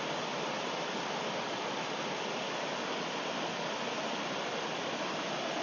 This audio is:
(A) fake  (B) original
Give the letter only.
B